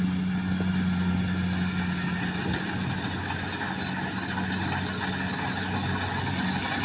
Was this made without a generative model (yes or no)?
yes